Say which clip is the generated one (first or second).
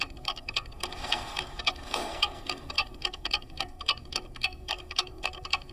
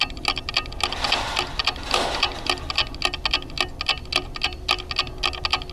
first